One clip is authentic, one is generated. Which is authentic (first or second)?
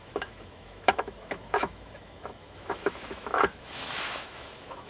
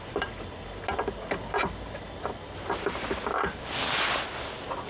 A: second